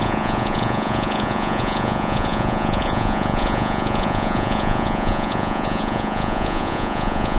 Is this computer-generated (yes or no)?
yes